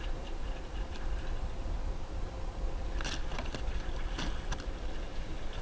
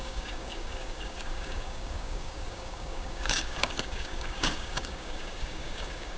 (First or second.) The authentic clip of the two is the first